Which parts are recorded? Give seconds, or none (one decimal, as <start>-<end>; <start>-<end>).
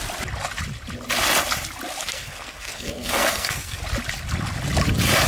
0.0-2.0; 3.8-5.3